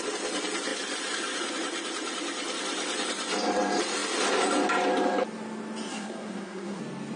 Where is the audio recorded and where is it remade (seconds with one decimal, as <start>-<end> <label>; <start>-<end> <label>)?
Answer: 0.0-5.9 recorded; 5.9-6.8 remade; 6.8-7.2 recorded